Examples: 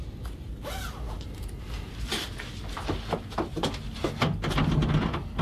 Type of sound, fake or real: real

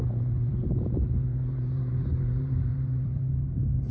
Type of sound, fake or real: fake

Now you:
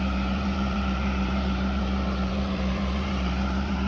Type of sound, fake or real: fake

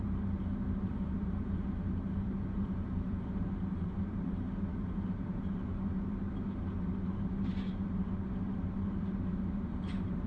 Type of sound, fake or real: fake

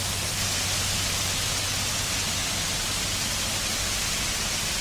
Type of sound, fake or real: real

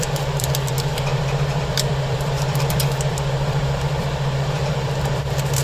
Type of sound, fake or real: fake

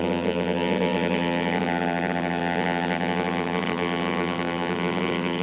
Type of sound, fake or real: fake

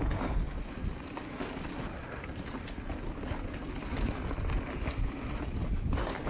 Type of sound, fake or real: real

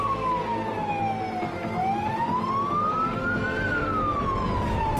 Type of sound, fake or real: real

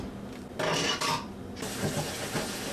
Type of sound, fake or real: real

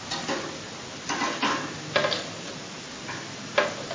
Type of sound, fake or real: real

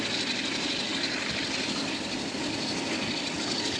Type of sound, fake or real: real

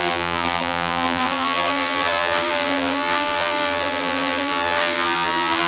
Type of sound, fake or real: fake